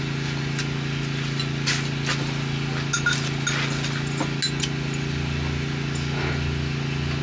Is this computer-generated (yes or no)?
no